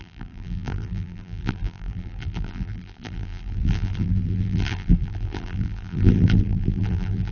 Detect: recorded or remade remade